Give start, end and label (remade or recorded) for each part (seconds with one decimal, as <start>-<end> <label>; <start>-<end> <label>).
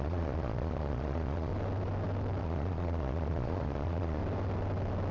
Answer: 0.0-1.5 remade; 1.5-2.4 recorded; 2.4-4.2 remade; 4.2-5.1 recorded